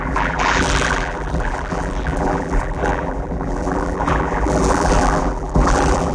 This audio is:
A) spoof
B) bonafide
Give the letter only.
A